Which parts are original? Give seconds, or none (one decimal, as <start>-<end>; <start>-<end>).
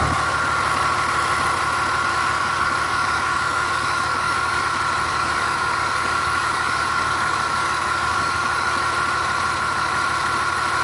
0.0-2.1; 4.6-5.1; 8.8-10.8